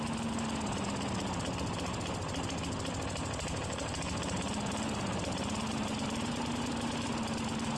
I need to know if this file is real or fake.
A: real